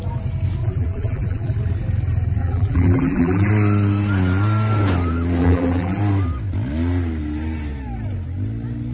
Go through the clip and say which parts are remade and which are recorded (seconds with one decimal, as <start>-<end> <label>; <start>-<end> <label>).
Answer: 0.0-0.6 recorded; 0.6-1.5 remade; 1.5-2.4 recorded; 2.4-3.5 remade; 3.5-5.4 recorded; 5.4-6.0 remade; 6.0-8.9 recorded